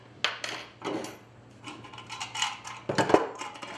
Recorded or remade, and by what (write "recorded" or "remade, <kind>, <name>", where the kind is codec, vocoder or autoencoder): recorded